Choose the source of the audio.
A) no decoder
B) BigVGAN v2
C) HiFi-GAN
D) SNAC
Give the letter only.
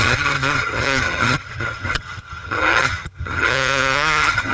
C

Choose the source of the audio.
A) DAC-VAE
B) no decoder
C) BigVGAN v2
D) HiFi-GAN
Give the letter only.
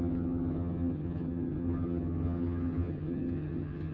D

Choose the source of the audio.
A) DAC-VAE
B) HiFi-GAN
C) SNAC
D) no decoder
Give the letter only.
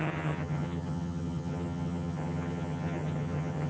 B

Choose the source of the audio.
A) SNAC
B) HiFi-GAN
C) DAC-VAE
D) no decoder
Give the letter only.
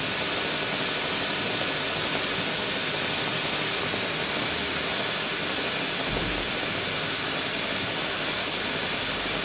D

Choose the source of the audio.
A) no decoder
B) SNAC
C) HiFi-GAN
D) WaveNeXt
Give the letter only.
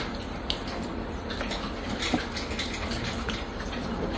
A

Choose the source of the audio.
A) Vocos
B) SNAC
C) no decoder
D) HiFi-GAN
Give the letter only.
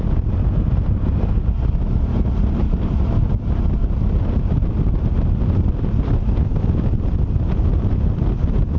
C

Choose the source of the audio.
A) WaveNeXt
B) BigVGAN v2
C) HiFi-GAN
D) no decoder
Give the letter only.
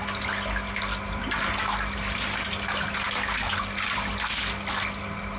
D